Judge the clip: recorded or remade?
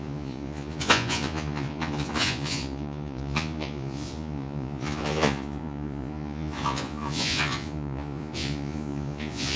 remade